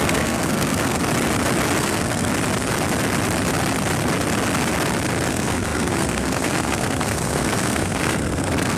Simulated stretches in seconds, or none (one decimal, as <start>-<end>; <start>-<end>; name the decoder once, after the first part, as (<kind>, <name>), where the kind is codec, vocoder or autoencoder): 0.0-1.0 (codec, SNAC); 1.8-2.3; 5.3-8.8